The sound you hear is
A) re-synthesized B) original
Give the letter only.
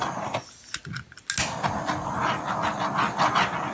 B